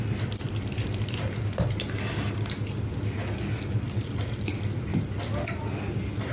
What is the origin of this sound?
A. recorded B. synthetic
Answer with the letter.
A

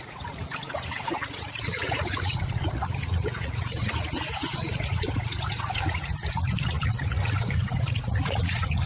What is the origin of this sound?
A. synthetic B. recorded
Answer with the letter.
A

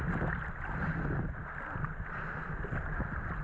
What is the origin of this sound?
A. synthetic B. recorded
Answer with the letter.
B